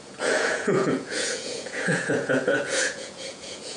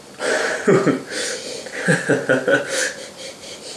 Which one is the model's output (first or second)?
first